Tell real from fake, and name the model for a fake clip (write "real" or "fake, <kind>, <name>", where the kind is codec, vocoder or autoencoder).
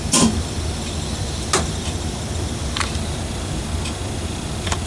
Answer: real